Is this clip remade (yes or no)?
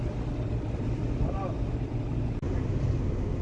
no